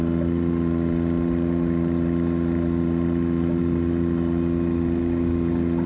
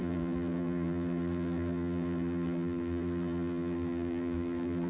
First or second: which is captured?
first